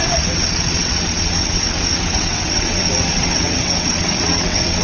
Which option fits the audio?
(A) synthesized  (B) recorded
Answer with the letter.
A